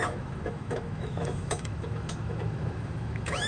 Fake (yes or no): yes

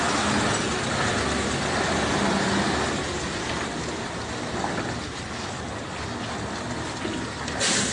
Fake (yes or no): no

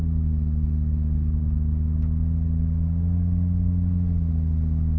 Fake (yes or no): no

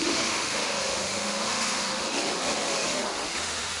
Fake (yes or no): yes